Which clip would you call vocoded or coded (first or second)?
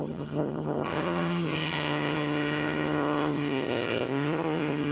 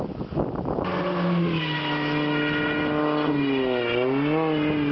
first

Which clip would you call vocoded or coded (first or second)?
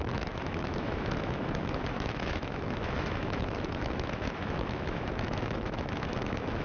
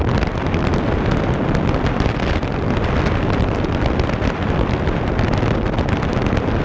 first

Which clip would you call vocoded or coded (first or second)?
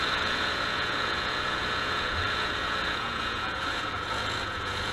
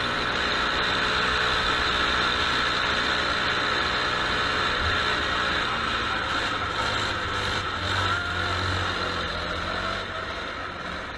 first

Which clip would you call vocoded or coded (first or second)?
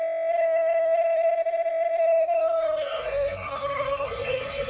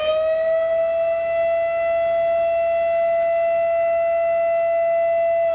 first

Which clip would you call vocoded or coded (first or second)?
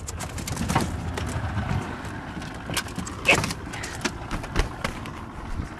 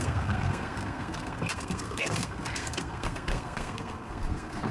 second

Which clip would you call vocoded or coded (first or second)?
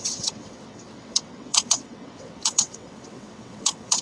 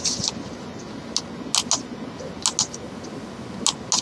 first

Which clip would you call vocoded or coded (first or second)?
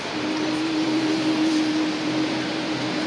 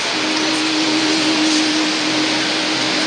first